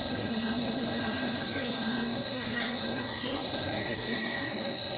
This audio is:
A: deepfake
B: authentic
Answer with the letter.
A